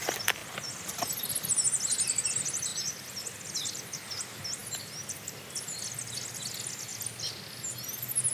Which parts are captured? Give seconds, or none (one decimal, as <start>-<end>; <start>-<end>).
0.0-8.3

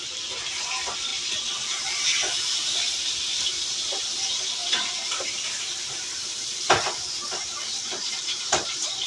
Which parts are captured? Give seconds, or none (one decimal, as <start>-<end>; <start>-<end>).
none

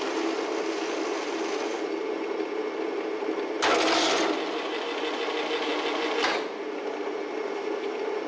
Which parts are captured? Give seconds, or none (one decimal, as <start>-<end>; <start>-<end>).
0.0-8.3

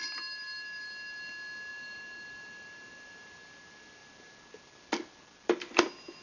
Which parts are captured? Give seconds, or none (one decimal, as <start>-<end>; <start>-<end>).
0.0-1.7; 2.9-6.2